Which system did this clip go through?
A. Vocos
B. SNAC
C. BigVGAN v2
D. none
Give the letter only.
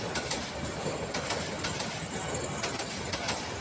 D